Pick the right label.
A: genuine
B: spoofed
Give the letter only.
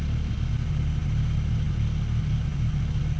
A